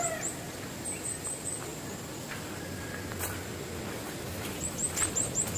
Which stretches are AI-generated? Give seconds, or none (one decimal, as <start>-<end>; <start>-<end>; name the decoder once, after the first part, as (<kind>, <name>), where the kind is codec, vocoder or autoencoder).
none